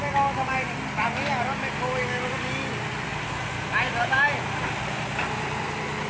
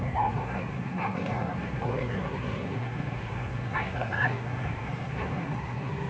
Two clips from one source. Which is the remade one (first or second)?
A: second